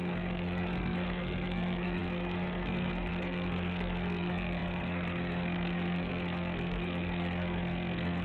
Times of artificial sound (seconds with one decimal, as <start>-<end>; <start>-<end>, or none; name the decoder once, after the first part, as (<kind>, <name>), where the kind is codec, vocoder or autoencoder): 0.0-8.2 (codec, SNAC)